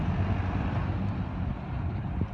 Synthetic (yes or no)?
yes